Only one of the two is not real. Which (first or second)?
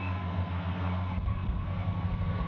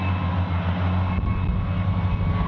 first